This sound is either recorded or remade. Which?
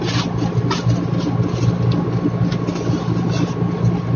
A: recorded